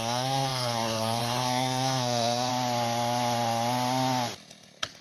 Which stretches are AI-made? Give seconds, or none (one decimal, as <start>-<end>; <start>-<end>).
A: 0.0-2.5